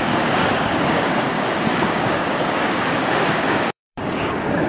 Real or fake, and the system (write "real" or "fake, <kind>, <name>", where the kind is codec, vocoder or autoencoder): fake, codec, DAC